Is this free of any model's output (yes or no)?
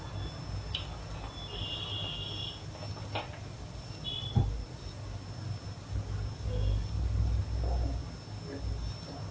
yes